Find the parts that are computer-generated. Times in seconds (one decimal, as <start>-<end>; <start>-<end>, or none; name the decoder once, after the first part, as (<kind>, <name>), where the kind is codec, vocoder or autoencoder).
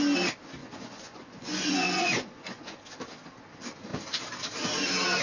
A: 0.6-2.8 (vocoder, Vocos)